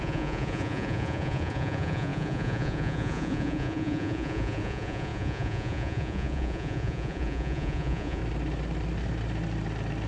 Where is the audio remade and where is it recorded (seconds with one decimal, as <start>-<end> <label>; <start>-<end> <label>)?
0.0-8.2 remade; 8.2-10.1 recorded